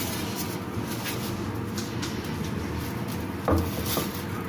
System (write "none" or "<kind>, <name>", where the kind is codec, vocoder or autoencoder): none